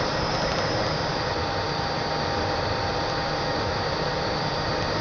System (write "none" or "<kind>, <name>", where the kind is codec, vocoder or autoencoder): none